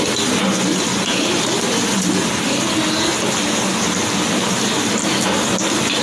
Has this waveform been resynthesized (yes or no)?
no